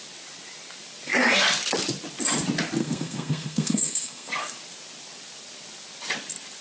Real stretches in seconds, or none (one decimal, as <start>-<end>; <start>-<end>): 0.0-2.8; 4.3-6.6